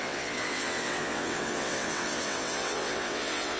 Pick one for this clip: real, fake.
fake